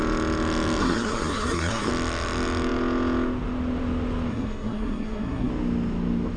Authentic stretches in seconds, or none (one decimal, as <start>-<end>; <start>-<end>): 0.0-0.8; 1.9-4.3; 5.5-6.4